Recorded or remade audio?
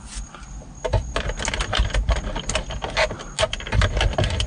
recorded